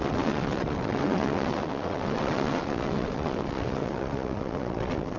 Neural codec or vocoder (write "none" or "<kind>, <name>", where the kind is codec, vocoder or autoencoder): vocoder, WaveNeXt